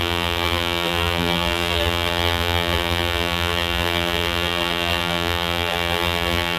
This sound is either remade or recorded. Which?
remade